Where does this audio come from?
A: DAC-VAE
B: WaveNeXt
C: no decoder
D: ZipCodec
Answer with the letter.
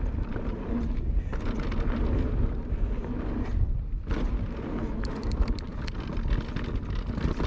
C